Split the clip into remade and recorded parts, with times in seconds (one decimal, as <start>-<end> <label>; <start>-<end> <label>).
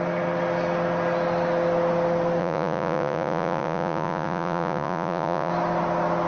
0.0-2.4 recorded; 2.4-5.5 remade; 5.5-6.3 recorded